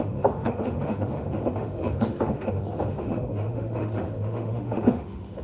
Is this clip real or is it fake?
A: fake